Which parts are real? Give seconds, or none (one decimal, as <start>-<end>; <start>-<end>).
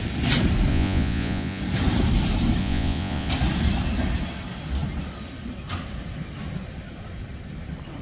0.0-0.7; 1.6-2.6; 3.3-8.0